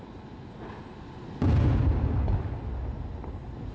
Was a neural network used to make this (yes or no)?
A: no